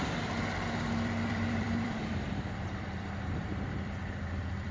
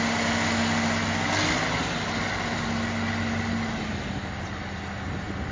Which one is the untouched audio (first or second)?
second